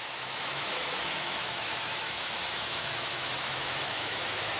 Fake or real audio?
fake